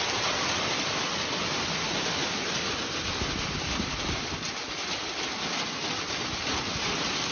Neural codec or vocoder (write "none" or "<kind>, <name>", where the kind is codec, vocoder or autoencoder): none